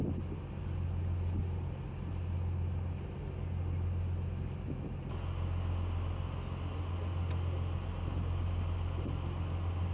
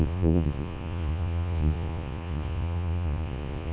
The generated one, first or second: second